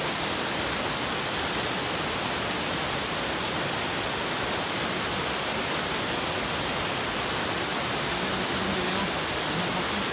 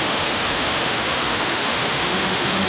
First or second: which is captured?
first